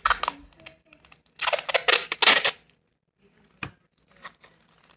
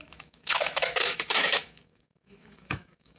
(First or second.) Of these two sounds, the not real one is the second